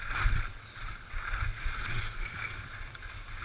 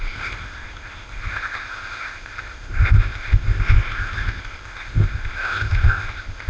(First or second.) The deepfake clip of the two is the second